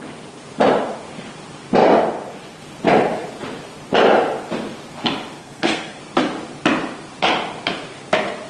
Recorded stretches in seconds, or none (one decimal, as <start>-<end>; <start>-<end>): 0.0-5.4; 6.0-8.5